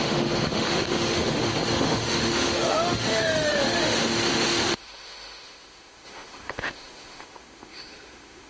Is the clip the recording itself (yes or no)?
no